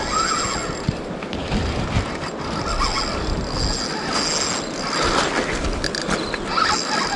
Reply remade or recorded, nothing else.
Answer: recorded